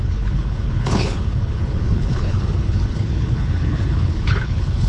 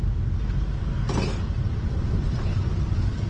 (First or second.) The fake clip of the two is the first